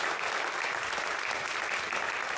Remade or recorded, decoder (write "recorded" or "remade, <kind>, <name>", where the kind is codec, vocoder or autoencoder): recorded